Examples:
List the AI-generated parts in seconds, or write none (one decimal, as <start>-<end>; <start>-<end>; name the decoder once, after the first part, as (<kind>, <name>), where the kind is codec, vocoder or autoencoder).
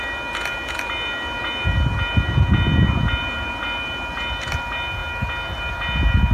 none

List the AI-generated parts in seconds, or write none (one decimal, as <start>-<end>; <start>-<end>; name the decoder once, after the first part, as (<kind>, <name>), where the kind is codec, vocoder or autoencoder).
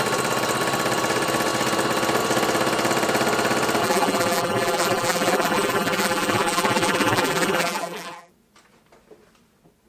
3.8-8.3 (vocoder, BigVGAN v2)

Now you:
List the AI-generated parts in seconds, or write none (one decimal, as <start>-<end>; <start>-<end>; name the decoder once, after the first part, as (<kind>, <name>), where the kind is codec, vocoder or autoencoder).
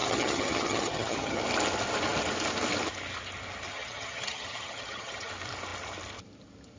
0.0-1.4 (vocoder, HiFi-GAN); 3.7-5.3